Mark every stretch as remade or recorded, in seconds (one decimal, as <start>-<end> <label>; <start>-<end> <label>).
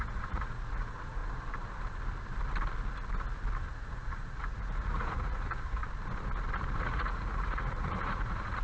0.0-1.2 remade; 1.2-3.7 recorded; 3.7-5.8 remade; 5.8-6.8 recorded; 6.8-8.6 remade